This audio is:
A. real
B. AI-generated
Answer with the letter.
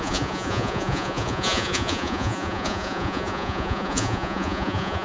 B